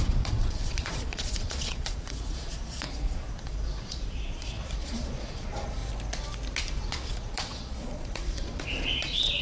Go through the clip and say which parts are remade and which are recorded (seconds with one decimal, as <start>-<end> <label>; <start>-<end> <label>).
0.0-5.8 remade; 5.8-6.6 recorded; 6.6-9.4 remade